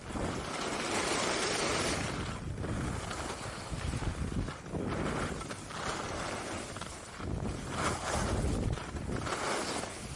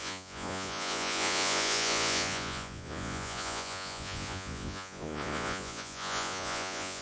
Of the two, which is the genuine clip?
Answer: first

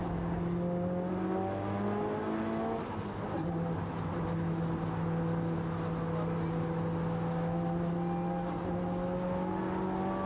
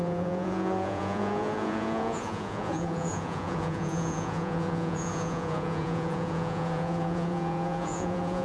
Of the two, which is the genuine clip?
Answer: first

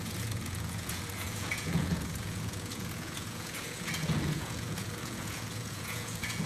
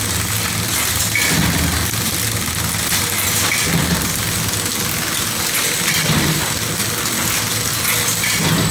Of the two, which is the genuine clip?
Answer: second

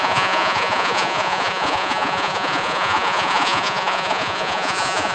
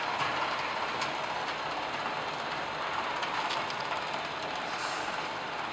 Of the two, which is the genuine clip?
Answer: second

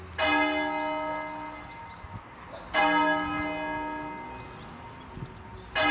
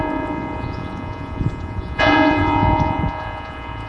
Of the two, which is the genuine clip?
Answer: first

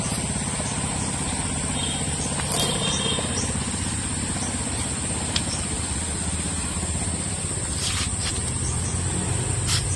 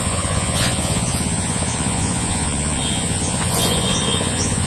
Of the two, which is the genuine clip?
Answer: first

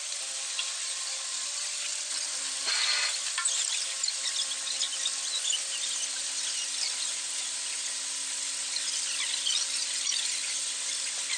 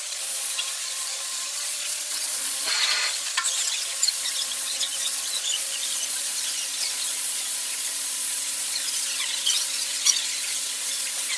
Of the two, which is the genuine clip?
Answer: first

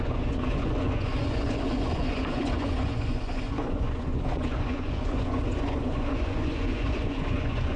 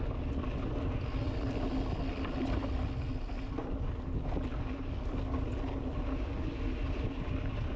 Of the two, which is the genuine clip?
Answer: second